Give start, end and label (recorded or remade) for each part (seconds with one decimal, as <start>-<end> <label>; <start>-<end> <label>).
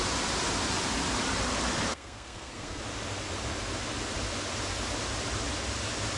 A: 0.0-1.9 recorded; 1.9-2.8 remade; 2.8-6.2 recorded